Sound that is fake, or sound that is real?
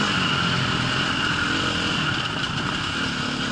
real